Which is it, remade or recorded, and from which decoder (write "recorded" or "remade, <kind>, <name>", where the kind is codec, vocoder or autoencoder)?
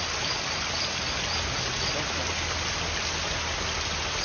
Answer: recorded